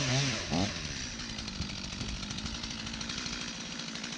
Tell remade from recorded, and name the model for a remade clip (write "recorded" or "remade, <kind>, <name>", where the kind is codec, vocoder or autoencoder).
remade, vocoder, BigVGAN v2